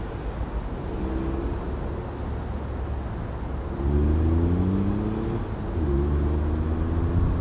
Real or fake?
real